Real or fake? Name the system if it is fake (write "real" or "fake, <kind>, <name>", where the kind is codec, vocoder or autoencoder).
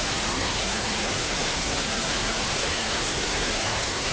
fake, codec, SNAC